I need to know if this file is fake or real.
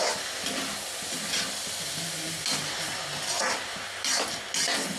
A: real